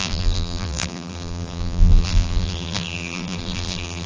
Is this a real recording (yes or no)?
no